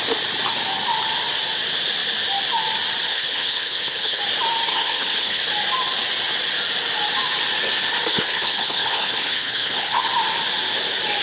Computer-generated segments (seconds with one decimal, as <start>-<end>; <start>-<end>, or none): 3.1-4.2; 4.7-5.4; 8.1-10.1

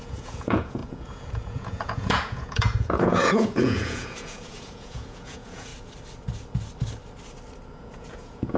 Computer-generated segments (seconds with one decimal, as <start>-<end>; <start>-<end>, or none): 0.0-5.7; 7.7-8.6